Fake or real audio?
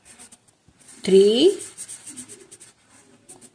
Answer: real